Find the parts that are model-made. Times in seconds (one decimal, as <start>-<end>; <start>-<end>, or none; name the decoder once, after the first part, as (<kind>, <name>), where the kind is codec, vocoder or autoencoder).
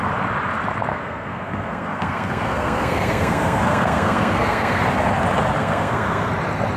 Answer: 0.9-4.8 (codec, SNAC); 5.6-6.3